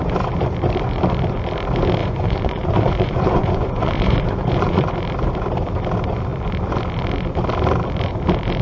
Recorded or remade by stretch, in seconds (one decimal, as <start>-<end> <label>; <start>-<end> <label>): 0.0-2.0 recorded; 2.0-4.9 remade; 4.9-8.6 recorded